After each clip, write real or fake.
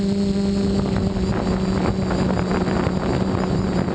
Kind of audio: real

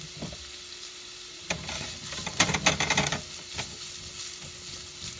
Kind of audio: real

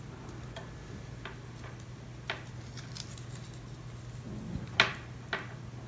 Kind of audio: real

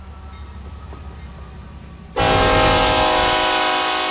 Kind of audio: real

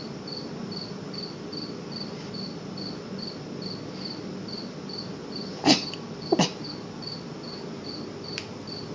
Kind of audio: real